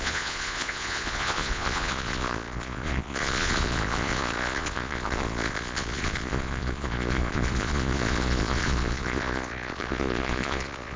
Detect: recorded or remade remade